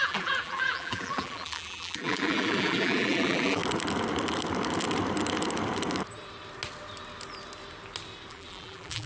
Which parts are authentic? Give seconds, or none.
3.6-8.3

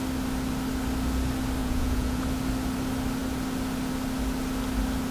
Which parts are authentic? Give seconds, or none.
0.0-1.6; 2.2-5.1

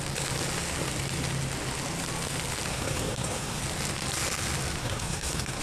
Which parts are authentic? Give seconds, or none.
0.0-2.7; 3.6-4.8